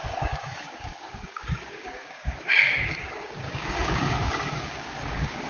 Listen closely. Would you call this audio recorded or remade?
remade